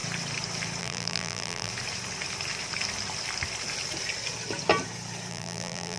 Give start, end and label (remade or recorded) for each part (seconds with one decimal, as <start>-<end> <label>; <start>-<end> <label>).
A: 0.0-0.8 recorded; 0.8-1.7 remade; 1.7-5.3 recorded; 5.3-6.0 remade